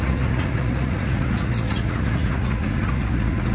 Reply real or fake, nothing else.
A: fake